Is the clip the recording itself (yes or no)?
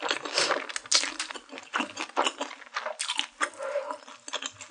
yes